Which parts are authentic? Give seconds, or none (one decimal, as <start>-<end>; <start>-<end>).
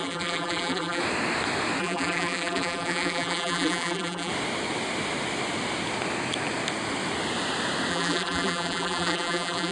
1.0-1.8; 4.3-7.9